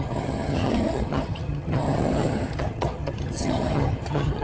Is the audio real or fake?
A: fake